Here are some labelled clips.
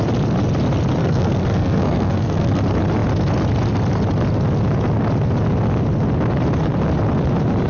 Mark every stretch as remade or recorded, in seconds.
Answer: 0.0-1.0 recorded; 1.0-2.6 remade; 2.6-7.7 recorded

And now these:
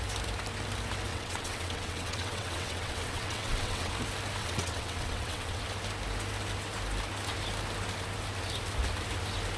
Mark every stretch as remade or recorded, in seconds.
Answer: 0.0-1.1 recorded; 1.1-3.9 remade; 3.9-4.4 recorded; 4.4-5.6 remade; 5.6-9.6 recorded

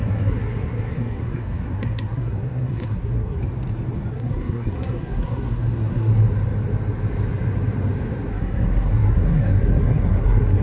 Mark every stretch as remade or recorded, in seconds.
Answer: 0.0-3.4 remade; 3.4-4.1 recorded; 4.1-6.1 remade; 6.1-8.3 recorded; 8.3-10.6 remade

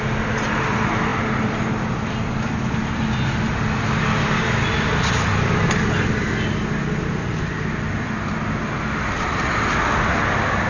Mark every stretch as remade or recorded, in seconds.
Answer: 0.0-10.7 recorded

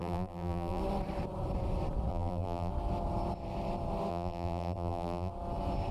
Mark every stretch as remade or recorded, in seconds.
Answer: 0.0-0.8 remade; 0.8-2.1 recorded; 2.1-2.7 remade; 2.7-4.1 recorded; 4.1-5.3 remade; 5.3-5.9 recorded

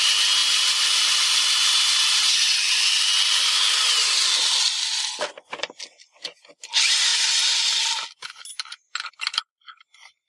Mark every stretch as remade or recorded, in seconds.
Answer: 0.0-10.3 recorded

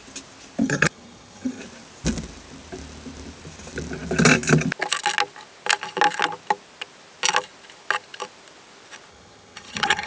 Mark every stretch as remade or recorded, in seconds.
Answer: 0.0-0.6 recorded; 0.6-1.6 remade; 1.6-9.1 recorded; 9.1-10.1 remade

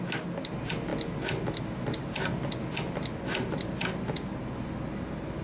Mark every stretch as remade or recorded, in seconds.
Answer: 0.0-5.4 recorded